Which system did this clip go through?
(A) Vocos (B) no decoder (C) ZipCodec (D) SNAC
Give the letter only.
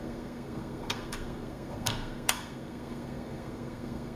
D